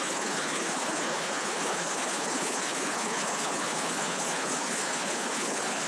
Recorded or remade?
remade